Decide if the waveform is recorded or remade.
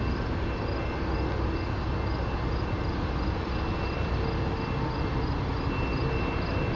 recorded